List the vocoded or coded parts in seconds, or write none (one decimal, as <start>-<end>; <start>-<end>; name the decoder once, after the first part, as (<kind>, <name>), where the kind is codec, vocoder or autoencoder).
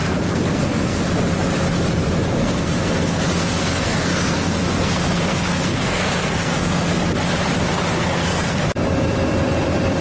0.0-1.0 (codec, SNAC); 2.4-6.9; 7.9-8.6